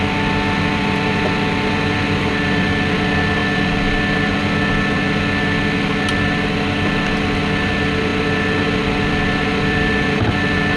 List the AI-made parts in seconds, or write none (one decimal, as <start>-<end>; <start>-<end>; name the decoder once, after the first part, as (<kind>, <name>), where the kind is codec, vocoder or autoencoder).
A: none